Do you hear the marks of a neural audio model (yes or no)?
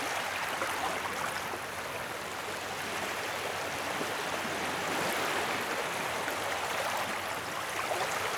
no